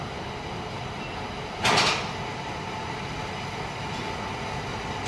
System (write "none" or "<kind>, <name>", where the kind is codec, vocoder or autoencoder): none